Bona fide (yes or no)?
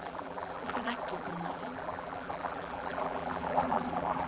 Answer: no